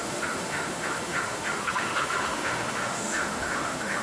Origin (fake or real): fake